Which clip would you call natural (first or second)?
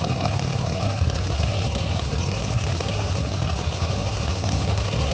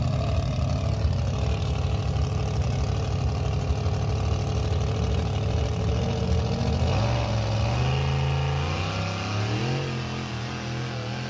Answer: second